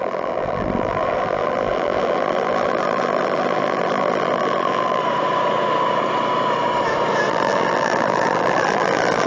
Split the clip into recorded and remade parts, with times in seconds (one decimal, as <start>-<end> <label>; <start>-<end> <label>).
0.0-5.0 remade; 5.0-7.3 recorded; 7.3-9.3 remade